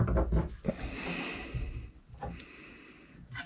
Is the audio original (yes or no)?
yes